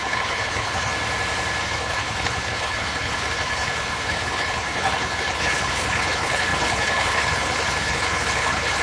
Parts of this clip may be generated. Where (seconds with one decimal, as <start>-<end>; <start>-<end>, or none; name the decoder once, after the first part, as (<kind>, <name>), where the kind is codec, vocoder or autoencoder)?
0.0-0.9 (codec, HILCodec); 1.6-8.8